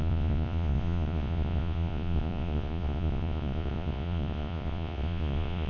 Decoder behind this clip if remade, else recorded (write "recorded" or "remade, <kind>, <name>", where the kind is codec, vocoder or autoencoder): remade, vocoder, Vocos